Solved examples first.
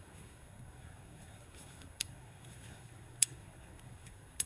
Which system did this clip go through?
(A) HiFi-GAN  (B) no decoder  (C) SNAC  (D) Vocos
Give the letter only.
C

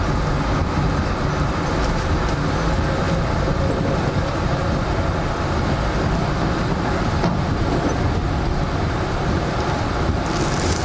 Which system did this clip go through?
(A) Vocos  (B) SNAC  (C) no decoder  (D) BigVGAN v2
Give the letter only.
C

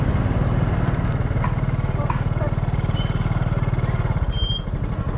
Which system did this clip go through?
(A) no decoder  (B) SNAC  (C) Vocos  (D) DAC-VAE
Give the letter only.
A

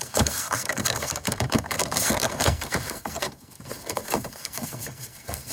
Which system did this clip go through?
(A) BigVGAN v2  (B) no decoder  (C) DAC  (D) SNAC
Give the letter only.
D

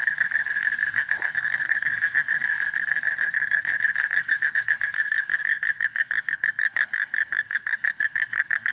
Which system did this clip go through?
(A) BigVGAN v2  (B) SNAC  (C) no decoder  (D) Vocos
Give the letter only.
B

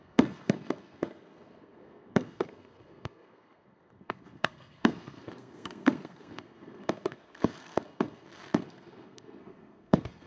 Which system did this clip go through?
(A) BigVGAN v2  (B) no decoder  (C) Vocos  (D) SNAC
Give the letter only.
D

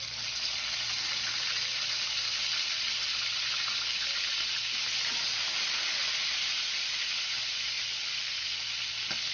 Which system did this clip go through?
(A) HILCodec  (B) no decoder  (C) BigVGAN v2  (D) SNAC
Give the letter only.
B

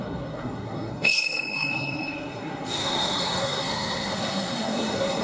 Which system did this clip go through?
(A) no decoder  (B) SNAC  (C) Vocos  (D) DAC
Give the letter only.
B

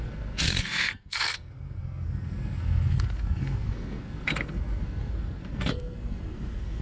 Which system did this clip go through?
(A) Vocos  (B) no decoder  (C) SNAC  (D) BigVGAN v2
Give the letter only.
C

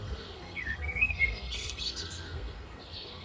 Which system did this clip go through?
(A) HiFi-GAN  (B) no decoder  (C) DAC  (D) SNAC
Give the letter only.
D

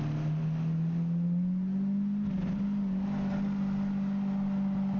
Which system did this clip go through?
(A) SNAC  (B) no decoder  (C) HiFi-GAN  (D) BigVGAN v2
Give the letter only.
B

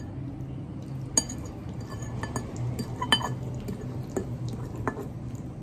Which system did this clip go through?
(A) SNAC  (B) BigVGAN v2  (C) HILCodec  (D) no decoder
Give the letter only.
D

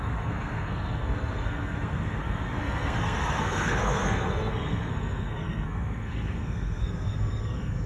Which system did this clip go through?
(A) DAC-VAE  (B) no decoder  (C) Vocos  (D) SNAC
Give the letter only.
D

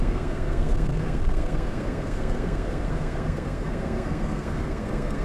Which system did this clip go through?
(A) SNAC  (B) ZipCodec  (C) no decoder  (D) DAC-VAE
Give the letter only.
A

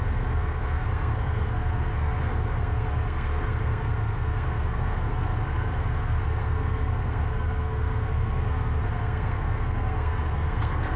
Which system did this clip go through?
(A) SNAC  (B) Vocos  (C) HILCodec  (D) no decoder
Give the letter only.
A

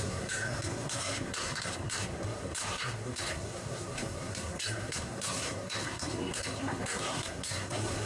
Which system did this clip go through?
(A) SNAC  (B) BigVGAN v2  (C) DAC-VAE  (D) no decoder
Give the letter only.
A